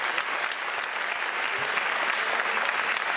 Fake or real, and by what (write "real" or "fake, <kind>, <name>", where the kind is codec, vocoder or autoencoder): real